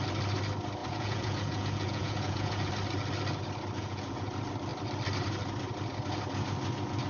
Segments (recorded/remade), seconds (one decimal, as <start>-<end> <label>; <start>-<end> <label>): 0.0-0.8 recorded; 0.8-2.7 remade; 2.7-3.8 recorded; 3.8-4.3 remade; 4.3-7.1 recorded